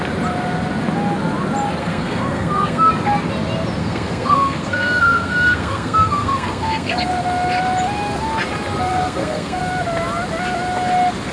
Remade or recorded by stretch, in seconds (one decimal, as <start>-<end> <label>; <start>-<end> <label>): 0.0-1.8 recorded; 1.8-2.9 remade; 2.9-3.8 recorded; 3.8-7.1 remade; 7.1-8.9 recorded; 8.9-9.6 remade; 9.6-11.3 recorded